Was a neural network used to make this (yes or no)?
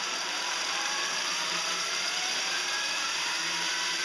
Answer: yes